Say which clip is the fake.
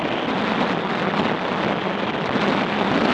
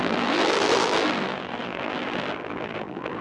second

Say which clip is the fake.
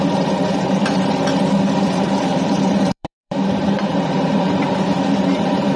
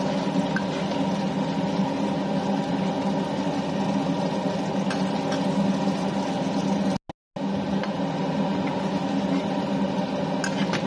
first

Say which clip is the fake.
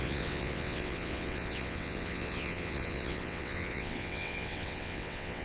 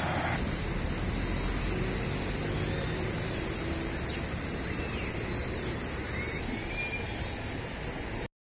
first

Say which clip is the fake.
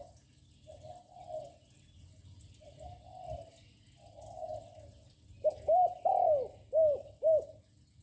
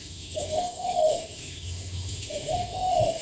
second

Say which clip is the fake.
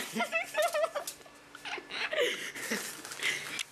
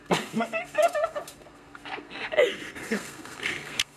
second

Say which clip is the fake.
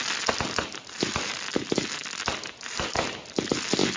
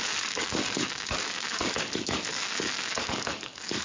second